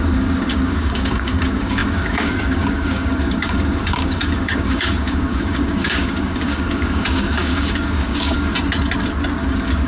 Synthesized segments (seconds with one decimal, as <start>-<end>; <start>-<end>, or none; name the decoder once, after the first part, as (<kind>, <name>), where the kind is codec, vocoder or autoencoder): 0.0-8.5 (codec, DAC); 9.5-9.9